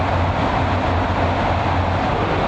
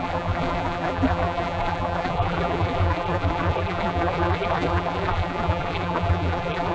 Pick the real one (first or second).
first